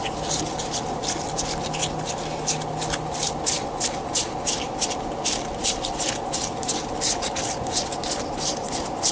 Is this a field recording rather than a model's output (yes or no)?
yes